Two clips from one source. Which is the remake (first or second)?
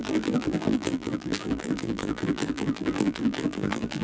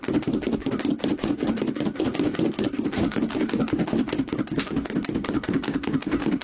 first